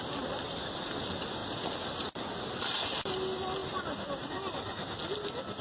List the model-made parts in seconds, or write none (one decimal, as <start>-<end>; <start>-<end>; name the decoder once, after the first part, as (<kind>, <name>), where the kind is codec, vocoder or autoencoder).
none

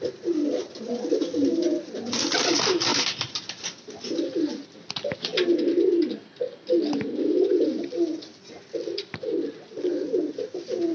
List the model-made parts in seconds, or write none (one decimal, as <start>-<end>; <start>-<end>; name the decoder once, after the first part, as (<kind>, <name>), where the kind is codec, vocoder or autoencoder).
none

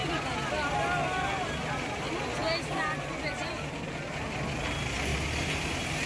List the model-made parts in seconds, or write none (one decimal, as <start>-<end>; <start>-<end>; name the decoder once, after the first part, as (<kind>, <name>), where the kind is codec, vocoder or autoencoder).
none

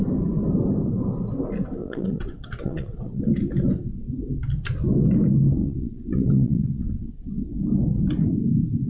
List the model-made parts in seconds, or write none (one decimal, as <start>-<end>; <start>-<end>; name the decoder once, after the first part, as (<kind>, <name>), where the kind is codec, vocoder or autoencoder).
1.8-3.2 (vocoder, WaveNeXt); 5.6-7.1

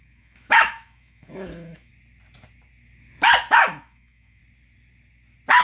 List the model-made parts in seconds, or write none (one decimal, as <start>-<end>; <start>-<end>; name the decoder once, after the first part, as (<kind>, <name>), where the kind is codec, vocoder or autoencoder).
0.0-1.9 (autoencoder, DAC-VAE); 3.5-4.4